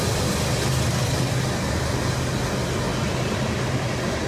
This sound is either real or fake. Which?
real